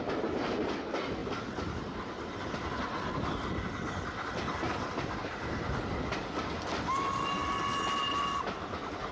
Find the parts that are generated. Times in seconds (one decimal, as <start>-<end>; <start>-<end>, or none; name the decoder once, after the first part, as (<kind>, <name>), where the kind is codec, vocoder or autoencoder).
none